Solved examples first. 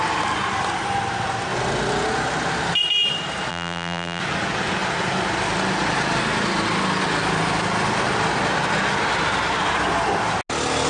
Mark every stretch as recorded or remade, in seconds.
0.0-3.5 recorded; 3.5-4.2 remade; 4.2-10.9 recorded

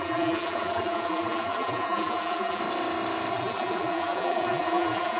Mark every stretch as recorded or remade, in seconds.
0.0-2.6 remade; 2.6-3.3 recorded; 3.3-5.2 remade

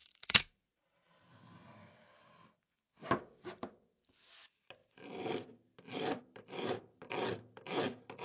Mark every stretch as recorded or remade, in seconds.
0.0-1.1 remade; 1.1-8.2 recorded